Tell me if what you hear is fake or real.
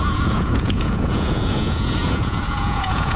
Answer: fake